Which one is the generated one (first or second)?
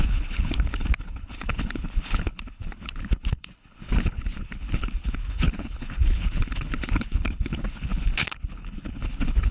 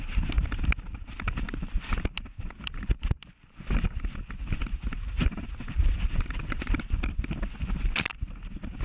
first